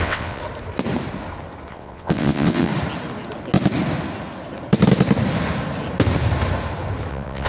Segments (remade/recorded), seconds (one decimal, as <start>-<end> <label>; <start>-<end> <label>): 0.0-0.4 remade; 0.4-1.7 recorded; 1.7-2.7 remade; 2.7-7.1 recorded; 7.1-7.5 remade